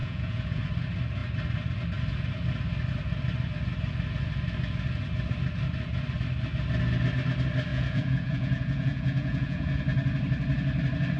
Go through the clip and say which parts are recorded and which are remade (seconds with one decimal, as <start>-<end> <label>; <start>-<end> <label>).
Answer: 0.0-0.6 remade; 0.6-7.7 recorded; 7.7-9.8 remade; 9.8-11.2 recorded